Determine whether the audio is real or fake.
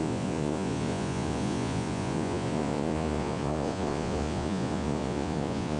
fake